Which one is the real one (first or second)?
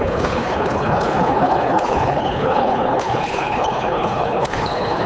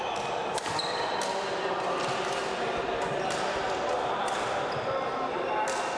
second